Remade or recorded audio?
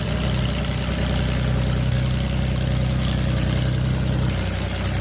recorded